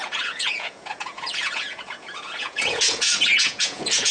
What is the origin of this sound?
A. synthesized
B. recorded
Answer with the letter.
A